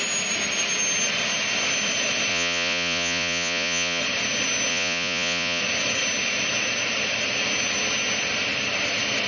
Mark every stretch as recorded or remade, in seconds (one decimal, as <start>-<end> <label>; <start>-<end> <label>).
0.0-2.3 recorded; 2.3-4.0 remade; 4.0-4.7 recorded; 4.7-5.6 remade; 5.6-9.3 recorded